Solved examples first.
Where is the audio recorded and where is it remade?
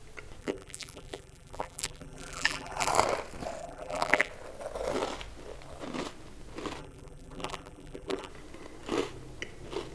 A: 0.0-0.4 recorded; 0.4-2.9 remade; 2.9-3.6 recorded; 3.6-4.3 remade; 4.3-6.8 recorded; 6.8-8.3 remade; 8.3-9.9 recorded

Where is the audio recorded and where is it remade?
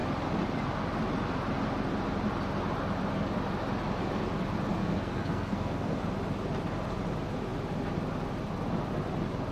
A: 0.0-4.8 recorded; 4.8-6.0 remade; 6.0-9.5 recorded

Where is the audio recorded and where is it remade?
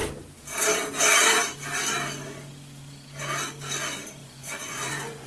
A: 0.0-4.2 recorded; 4.2-5.3 remade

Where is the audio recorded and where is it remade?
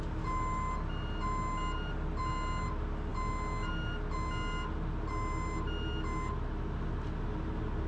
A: 0.0-7.9 recorded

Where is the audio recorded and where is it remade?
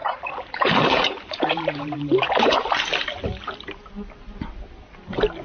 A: 0.0-2.7 remade; 2.7-5.4 recorded